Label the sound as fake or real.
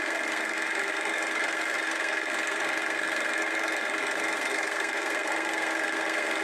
fake